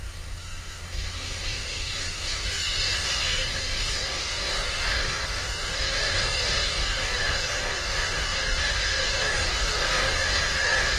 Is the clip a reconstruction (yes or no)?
yes